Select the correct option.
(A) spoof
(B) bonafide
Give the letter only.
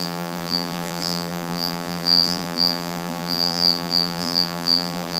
A